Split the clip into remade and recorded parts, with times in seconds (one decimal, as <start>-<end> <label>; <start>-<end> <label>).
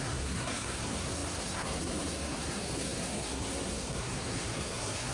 0.0-5.1 remade